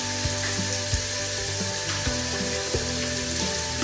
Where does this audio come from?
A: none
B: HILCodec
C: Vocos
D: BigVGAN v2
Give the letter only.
A